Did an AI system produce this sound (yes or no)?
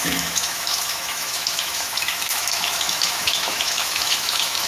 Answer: yes